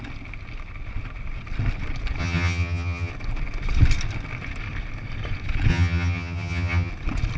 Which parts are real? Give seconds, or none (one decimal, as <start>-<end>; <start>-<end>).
0.0-2.2; 3.1-5.7; 6.9-7.4

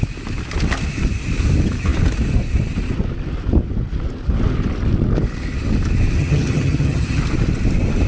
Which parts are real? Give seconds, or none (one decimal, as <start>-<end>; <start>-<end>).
0.0-6.2; 7.2-8.1

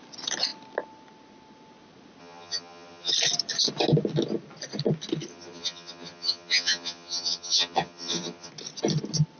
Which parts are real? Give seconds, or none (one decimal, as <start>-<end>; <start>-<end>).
0.0-2.2; 3.1-5.3; 8.5-9.4